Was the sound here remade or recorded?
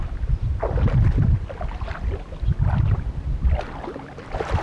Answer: recorded